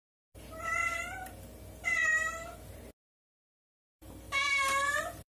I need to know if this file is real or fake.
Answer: fake